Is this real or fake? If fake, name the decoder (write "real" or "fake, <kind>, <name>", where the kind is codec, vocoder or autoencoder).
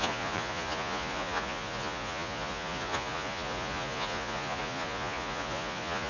fake, vocoder, Vocos